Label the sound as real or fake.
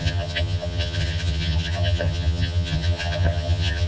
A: fake